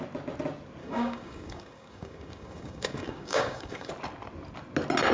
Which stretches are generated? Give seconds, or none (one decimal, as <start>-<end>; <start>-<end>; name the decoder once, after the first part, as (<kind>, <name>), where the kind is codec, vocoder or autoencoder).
0.8-3.9 (codec, DAC)

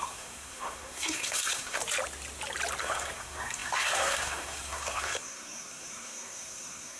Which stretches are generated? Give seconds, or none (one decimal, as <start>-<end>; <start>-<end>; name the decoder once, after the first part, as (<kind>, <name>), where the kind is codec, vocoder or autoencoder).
0.0-1.8 (codec, SNAC); 2.8-7.0

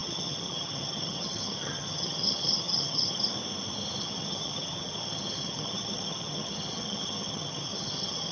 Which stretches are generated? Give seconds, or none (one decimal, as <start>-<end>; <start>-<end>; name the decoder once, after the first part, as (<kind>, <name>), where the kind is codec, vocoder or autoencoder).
0.0-3.2 (vocoder, HiFi-GAN); 4.0-8.3

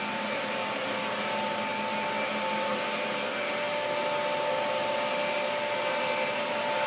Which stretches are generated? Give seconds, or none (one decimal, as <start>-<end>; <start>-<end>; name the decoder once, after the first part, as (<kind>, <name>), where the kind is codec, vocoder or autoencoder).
none

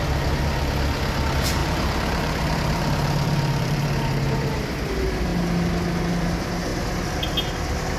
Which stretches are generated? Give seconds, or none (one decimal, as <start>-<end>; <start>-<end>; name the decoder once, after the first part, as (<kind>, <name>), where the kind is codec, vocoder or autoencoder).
1.6-3.9 (vocoder, BigVGAN v2)